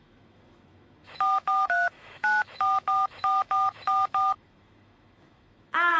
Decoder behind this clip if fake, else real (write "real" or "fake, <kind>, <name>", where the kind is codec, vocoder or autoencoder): fake, autoencoder, DAC-VAE